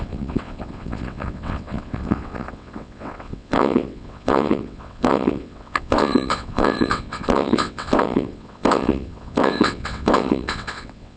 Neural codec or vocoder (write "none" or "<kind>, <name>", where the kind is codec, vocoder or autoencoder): vocoder, WaveNeXt